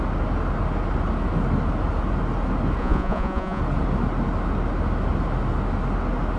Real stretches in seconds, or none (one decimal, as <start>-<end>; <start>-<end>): 0.0-2.8; 3.6-6.4